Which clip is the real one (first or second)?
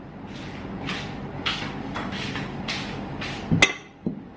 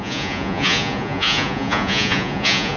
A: first